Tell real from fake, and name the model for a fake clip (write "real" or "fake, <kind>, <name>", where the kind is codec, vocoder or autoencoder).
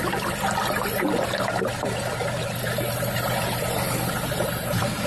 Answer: real